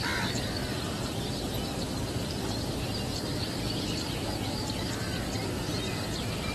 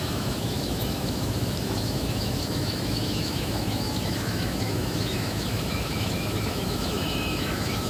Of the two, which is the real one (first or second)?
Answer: first